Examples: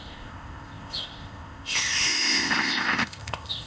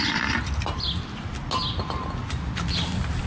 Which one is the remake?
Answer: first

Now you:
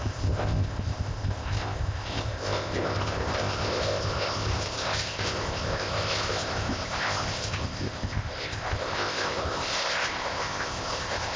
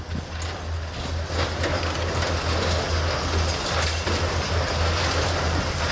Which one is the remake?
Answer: first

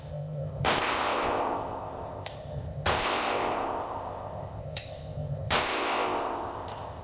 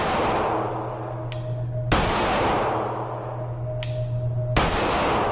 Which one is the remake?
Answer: first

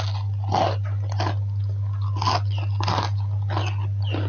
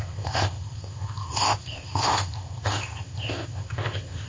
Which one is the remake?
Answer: second